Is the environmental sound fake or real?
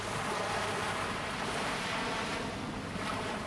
real